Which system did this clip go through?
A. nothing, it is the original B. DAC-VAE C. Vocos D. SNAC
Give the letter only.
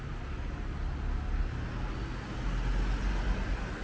A